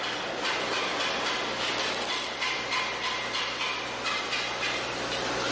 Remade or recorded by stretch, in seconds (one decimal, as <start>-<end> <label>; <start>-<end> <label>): 0.0-5.5 recorded